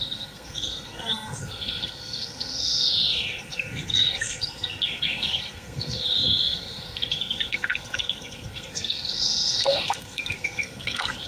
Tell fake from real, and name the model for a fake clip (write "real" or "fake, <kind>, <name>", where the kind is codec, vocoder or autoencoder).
fake, codec, SNAC